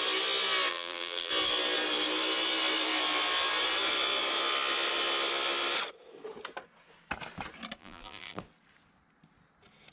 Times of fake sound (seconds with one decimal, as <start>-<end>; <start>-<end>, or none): 0.7-1.3; 7.8-8.4